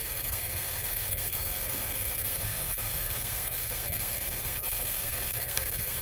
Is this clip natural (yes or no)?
no